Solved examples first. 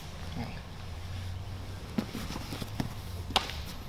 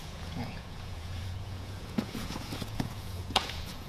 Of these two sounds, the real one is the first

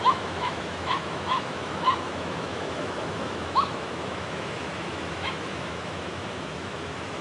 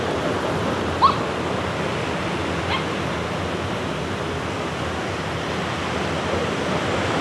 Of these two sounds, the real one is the second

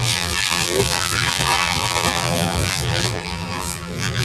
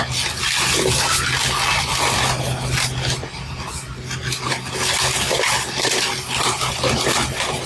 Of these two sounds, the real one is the second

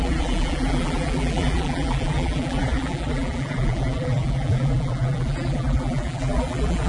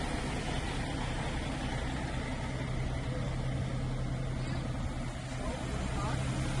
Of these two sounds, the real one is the second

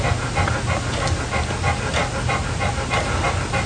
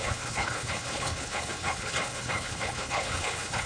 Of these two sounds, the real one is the first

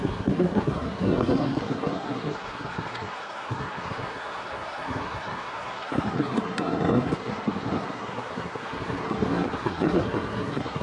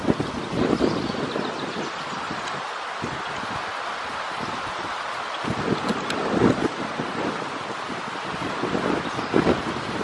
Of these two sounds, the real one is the second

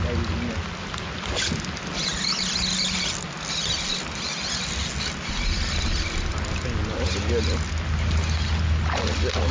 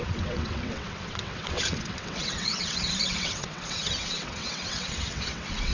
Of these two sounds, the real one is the first